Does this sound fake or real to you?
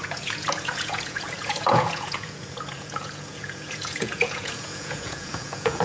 fake